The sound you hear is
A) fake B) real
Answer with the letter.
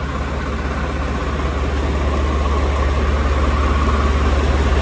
B